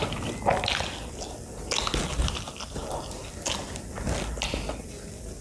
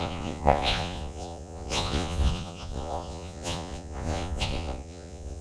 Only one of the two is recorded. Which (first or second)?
first